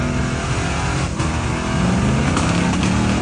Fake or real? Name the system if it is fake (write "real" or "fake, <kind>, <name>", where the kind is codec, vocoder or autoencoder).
real